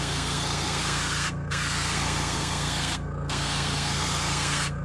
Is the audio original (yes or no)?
no